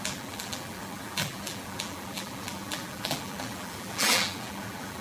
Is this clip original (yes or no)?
no